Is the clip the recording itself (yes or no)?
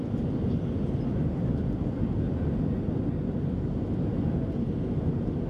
yes